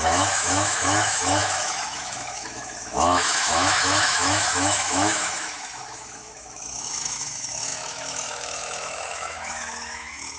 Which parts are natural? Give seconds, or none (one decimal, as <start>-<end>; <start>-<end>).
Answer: none